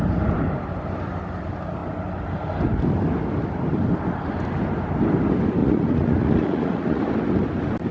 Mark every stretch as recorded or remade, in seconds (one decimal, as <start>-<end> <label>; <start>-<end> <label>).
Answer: 0.0-5.6 recorded; 5.6-7.0 remade; 7.0-7.9 recorded